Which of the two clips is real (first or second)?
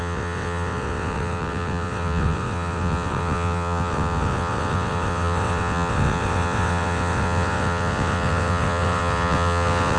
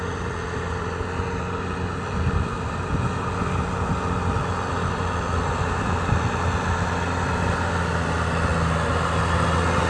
second